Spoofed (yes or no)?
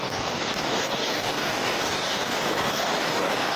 yes